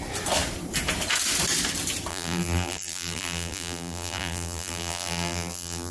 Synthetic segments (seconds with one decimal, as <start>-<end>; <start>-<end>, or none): 2.1-5.9